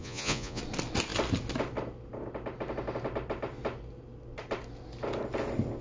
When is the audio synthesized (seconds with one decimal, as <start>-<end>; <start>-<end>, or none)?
0.0-0.6

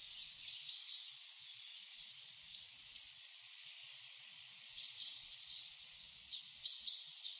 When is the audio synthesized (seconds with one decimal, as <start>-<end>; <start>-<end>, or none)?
0.9-7.4